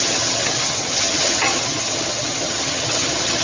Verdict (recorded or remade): remade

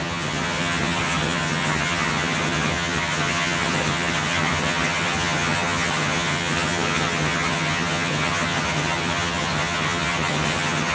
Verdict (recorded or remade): remade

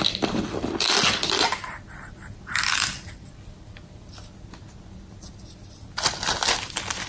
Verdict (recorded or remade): recorded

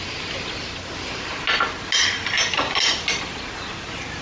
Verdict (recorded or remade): recorded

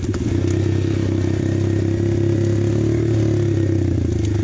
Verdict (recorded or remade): recorded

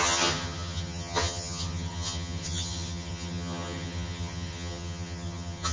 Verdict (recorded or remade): remade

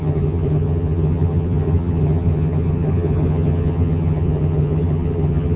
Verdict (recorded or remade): remade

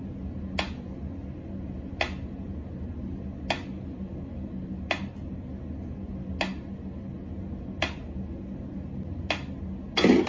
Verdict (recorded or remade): recorded